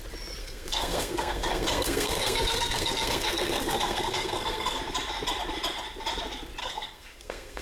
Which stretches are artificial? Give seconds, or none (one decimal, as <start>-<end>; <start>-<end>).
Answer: 0.4-4.8; 6.6-7.6